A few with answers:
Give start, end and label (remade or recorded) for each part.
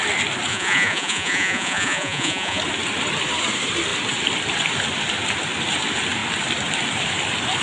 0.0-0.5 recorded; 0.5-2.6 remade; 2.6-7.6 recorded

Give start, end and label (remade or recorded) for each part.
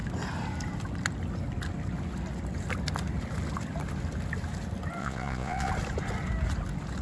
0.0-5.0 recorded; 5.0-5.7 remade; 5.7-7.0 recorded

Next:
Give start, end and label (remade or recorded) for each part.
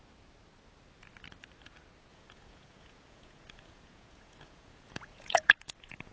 0.0-2.1 recorded; 2.1-6.1 remade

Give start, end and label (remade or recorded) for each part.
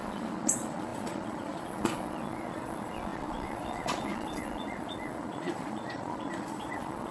0.0-7.1 remade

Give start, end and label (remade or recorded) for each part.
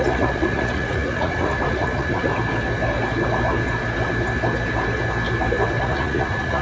0.0-2.3 remade; 2.3-5.8 recorded; 5.8-6.6 remade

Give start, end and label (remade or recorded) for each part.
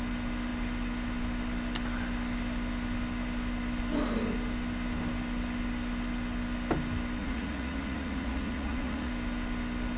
0.0-7.2 recorded; 7.2-9.1 remade; 9.1-10.0 recorded